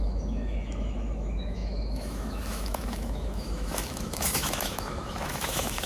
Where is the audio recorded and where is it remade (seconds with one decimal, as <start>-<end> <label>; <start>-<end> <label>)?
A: 0.0-5.9 remade